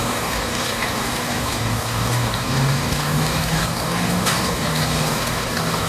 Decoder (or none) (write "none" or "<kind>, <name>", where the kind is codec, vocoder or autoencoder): codec, DAC